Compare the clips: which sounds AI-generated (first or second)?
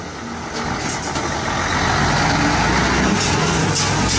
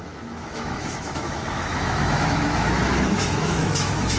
second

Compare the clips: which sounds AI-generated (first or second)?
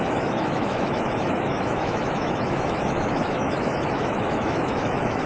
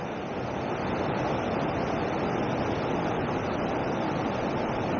first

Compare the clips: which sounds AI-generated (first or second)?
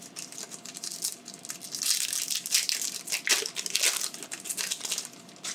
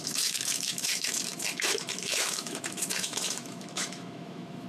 second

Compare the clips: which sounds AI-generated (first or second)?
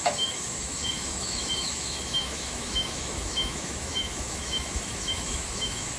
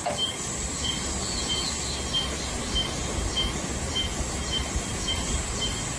first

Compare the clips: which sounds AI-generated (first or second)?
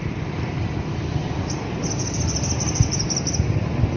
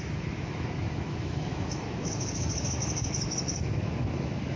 second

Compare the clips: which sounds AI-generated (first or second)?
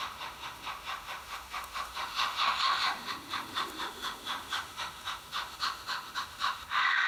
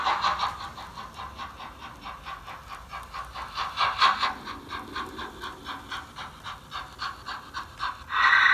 first